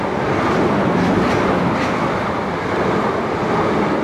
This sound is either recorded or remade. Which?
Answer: recorded